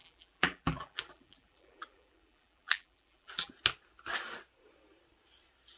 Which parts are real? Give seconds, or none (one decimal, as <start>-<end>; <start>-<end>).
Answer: 3.5-5.8